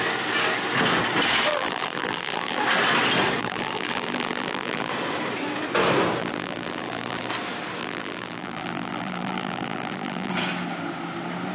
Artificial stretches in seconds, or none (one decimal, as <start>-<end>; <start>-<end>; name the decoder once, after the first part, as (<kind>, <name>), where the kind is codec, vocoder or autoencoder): 1.5-2.6 (vocoder, BigVGAN v2); 3.4-4.9; 6.2-7.3; 7.8-10.3